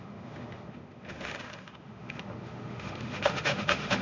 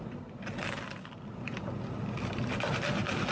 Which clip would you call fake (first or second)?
first